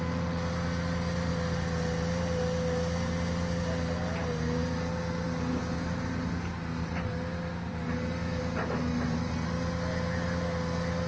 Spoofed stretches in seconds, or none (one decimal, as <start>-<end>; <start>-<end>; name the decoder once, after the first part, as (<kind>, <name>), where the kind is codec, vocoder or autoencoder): none